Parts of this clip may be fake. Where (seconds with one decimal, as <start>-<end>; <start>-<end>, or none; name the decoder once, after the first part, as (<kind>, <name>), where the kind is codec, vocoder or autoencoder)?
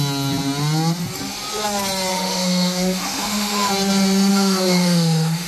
2.1-3.7 (autoencoder, DAC-VAE); 4.3-5.5